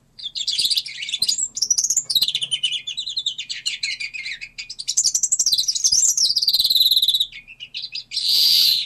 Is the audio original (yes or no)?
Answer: no